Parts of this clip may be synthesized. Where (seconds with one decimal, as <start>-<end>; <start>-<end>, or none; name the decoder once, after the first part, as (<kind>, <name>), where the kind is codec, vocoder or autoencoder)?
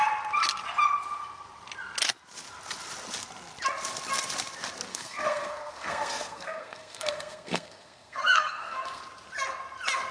4.9-9.0 (codec, SNAC)